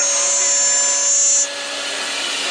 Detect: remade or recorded recorded